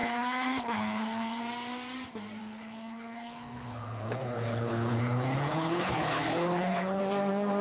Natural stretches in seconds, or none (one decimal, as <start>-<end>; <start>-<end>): 1.4-2.4; 7.0-7.6